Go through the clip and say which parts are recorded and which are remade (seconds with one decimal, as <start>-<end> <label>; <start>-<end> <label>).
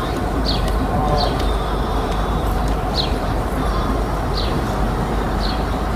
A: 0.0-6.0 remade